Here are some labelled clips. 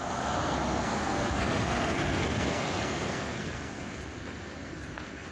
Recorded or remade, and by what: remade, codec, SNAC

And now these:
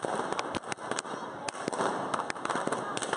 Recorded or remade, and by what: recorded